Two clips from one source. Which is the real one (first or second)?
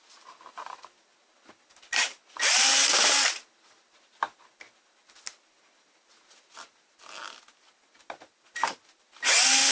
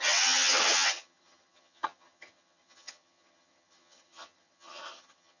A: first